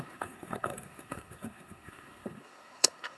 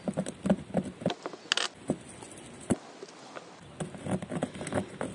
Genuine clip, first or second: second